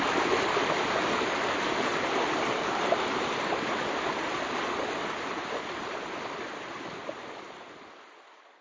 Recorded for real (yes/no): yes